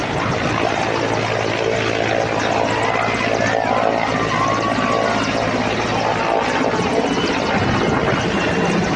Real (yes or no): yes